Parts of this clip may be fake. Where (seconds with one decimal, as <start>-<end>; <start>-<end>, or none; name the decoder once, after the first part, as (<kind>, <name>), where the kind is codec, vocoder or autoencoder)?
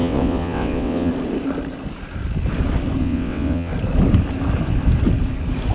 0.0-1.1 (vocoder, WaveNeXt); 3.0-3.7